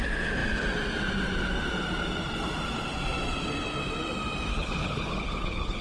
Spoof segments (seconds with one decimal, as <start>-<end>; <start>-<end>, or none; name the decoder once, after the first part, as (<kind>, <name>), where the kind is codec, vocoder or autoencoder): 4.5-5.8 (codec, HILCodec)

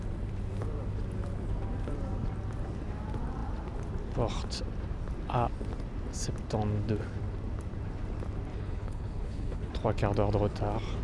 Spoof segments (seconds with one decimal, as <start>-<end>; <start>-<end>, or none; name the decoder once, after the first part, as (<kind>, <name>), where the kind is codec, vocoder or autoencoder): 8.5-9.7 (codec, HILCodec)

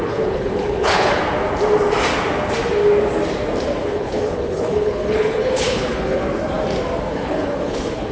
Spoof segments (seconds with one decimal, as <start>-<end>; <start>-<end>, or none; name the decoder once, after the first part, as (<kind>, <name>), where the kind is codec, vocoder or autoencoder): 0.0-1.2 (codec, HILCodec); 3.8-6.2; 7.1-8.1

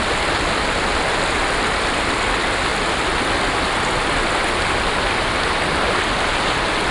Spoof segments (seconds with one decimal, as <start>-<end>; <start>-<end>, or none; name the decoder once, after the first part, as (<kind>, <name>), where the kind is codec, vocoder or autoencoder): none

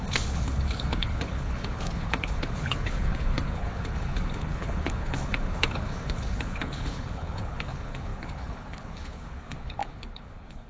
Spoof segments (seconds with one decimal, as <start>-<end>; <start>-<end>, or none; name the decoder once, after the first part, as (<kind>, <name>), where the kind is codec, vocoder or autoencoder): 0.0-10.7 (codec, HILCodec)

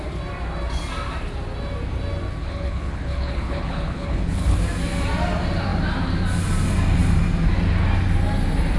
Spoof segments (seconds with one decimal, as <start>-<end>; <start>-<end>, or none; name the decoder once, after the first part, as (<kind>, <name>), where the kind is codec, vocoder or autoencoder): 2.4-4.6 (codec, HILCodec)